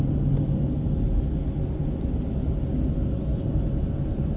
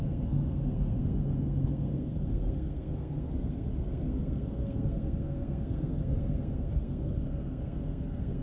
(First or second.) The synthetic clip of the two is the second